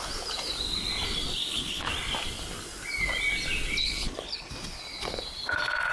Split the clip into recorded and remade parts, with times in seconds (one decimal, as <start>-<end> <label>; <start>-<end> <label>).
0.0-1.4 recorded; 1.4-1.9 remade; 1.9-3.8 recorded; 3.8-4.5 remade; 4.5-5.9 recorded